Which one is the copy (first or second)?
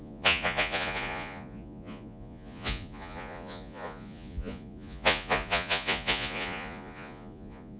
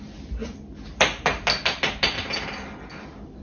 first